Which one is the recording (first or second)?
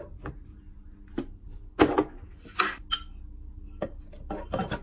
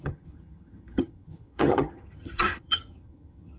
first